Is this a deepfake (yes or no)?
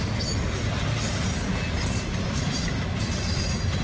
no